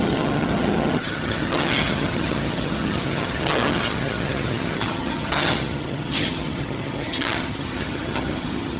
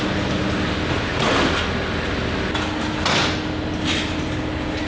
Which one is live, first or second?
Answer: second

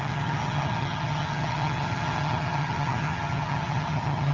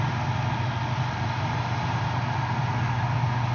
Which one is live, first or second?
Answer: second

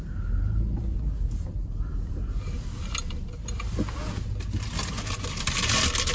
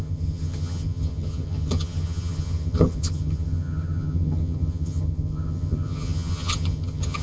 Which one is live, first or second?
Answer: first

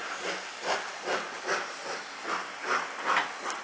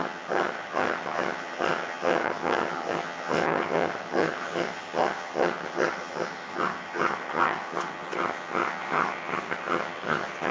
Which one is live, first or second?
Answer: first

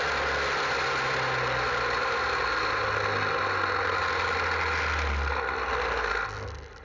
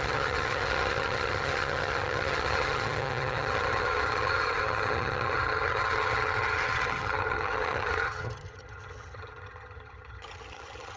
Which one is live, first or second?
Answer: first